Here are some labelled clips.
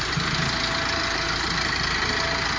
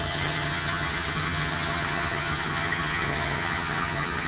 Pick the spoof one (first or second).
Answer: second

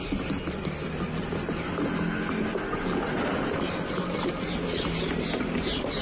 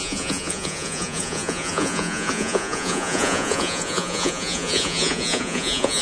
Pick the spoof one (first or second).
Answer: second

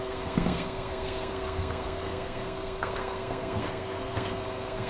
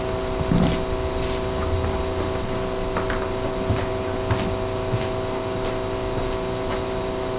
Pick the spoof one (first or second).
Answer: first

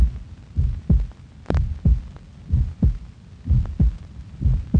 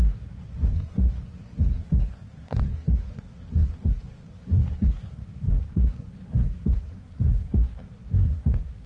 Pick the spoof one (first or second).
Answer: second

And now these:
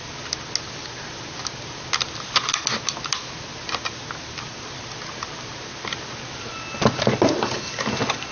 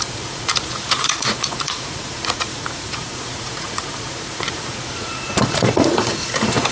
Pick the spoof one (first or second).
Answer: second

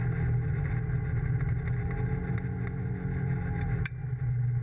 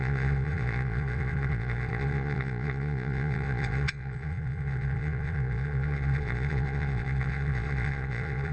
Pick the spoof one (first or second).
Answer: second